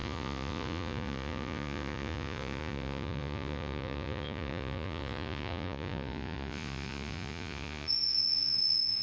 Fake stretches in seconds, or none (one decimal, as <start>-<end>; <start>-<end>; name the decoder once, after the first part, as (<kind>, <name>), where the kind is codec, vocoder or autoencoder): 0.0-9.0 (vocoder, Vocos)